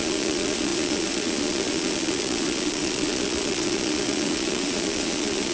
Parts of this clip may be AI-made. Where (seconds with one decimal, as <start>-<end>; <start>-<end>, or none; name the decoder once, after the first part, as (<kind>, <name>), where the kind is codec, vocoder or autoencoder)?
0.0-5.5 (vocoder, Vocos)